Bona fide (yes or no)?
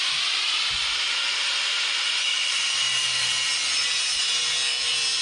yes